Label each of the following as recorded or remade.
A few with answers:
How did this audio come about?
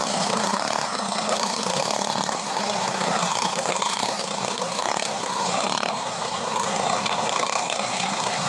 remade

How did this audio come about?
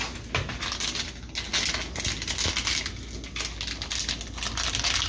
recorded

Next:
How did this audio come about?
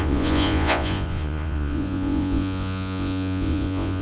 remade